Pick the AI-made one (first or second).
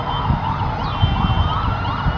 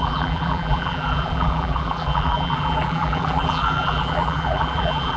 second